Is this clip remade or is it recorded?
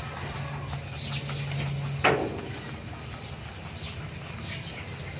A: recorded